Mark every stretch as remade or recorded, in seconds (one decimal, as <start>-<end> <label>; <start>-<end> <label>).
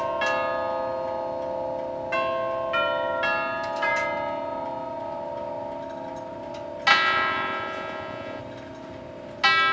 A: 0.0-6.9 recorded; 6.9-8.4 remade; 8.4-9.7 recorded